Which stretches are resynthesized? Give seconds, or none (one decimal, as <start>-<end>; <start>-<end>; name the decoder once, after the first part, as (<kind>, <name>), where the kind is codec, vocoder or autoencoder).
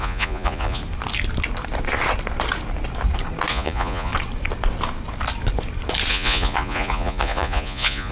0.0-0.8 (vocoder, Vocos); 3.5-4.1; 6.1-8.1